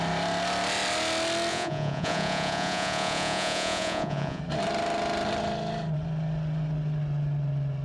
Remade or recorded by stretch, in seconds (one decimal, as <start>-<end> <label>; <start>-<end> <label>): 0.0-1.5 recorded; 1.5-4.4 remade; 4.4-7.8 recorded